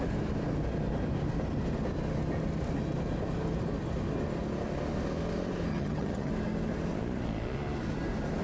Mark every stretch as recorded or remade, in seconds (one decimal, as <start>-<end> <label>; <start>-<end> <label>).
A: 0.0-5.7 recorded; 5.7-6.3 remade; 6.3-8.4 recorded